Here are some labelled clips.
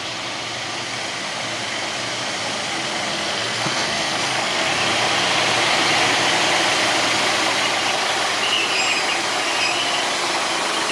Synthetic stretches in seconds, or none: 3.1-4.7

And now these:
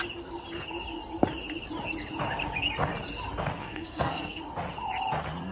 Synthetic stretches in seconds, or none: 3.6-4.4

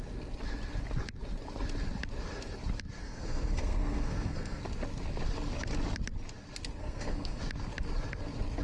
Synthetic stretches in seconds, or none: 3.0-4.6; 6.8-7.4